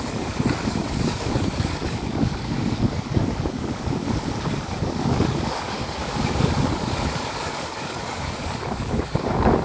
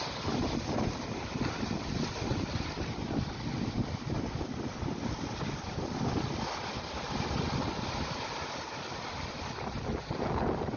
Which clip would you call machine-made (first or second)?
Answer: first